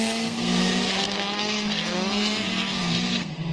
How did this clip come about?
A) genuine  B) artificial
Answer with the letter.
B